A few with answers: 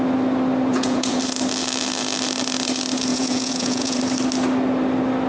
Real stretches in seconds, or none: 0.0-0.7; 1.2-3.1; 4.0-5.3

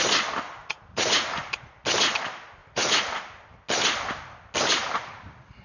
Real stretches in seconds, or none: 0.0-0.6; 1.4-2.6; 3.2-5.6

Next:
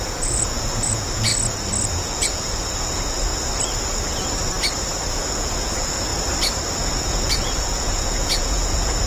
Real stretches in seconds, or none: 1.3-1.9; 3.3-5.1; 6.1-6.8

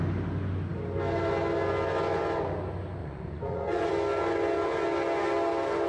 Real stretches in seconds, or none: 0.0-3.0; 3.9-5.9

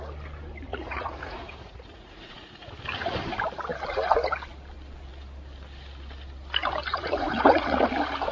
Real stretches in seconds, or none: 0.0-0.7; 2.7-6.9; 7.9-8.3

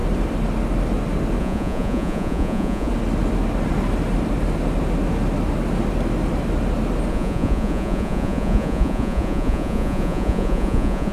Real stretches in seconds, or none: 0.0-1.4; 2.9-7.1